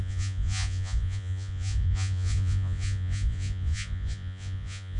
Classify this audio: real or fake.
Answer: fake